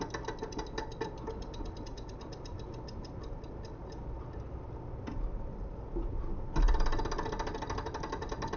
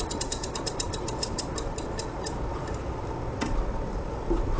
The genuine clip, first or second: first